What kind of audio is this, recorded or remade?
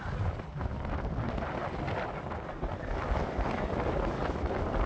recorded